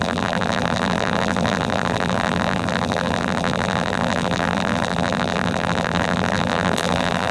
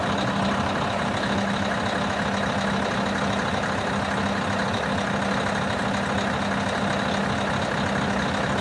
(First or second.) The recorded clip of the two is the second